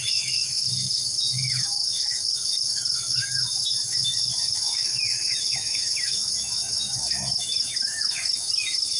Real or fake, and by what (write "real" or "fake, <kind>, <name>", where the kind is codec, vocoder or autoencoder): fake, autoencoder, DAC-VAE